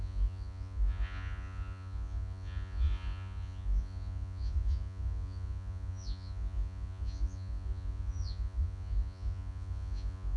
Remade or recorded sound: remade